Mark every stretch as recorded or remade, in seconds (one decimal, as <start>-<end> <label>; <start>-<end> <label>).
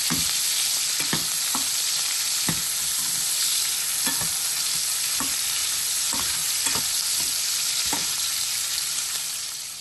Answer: 0.0-8.0 recorded; 8.0-9.8 remade